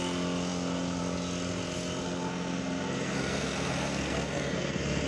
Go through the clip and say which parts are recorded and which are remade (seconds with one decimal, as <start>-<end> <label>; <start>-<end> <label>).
0.0-2.0 recorded; 2.0-5.1 remade